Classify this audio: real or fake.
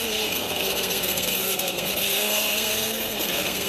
fake